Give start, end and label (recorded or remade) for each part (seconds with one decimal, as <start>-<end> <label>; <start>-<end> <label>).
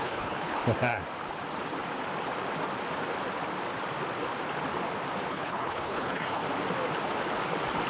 0.0-0.6 remade; 0.6-5.3 recorded; 5.3-6.4 remade; 6.4-7.9 recorded